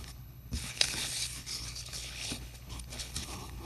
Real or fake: fake